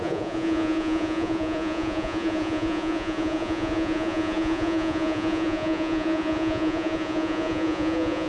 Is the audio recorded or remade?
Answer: remade